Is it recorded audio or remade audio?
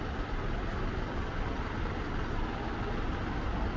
recorded